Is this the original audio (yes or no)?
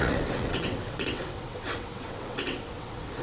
no